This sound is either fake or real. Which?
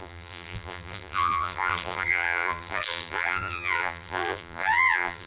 fake